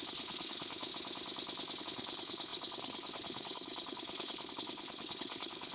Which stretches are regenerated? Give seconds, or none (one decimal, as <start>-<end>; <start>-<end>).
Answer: 0.0-0.9; 1.8-5.7

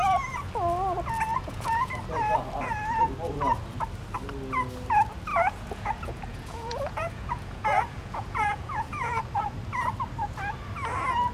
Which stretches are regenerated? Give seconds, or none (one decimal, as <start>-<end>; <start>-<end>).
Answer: 1.3-1.9; 5.3-9.2